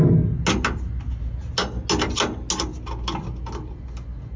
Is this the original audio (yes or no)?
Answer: yes